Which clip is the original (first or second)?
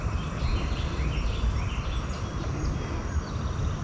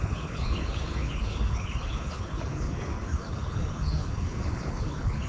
first